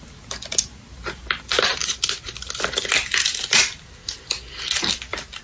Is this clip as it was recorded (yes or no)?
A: yes